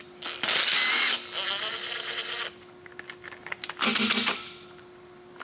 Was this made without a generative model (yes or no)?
yes